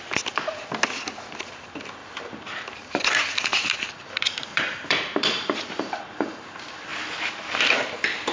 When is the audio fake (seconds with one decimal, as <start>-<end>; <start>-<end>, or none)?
2.0-3.0; 3.5-6.4